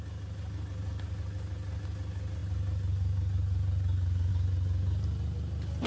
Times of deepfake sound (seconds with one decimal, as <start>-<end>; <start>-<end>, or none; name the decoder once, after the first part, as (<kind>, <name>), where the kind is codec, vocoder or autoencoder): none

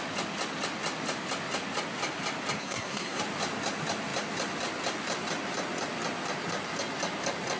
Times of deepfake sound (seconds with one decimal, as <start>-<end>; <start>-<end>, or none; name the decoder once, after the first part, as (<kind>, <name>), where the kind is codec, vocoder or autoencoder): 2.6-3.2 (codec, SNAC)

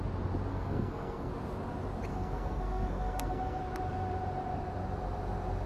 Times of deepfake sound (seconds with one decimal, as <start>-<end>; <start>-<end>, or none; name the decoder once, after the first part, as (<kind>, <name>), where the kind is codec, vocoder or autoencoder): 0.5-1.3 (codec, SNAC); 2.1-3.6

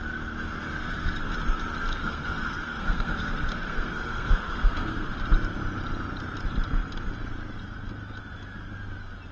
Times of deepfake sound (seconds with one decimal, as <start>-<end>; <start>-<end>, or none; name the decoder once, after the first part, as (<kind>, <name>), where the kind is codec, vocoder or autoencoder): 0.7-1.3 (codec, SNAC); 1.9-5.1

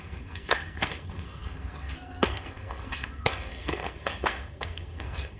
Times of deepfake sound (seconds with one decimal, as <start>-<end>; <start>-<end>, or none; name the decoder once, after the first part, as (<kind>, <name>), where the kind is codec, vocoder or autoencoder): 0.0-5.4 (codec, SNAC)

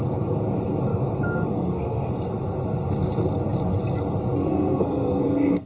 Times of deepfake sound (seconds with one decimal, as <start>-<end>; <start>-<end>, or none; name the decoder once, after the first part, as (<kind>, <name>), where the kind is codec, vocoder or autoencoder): 0.9-2.1 (codec, SNAC); 4.4-5.7

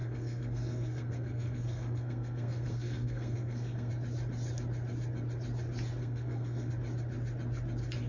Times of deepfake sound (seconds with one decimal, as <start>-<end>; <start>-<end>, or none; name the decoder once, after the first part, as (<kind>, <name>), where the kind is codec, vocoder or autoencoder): 0.0-3.9 (codec, SNAC); 6.0-6.7